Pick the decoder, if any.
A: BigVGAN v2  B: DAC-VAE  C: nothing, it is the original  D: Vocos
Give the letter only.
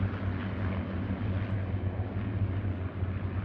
C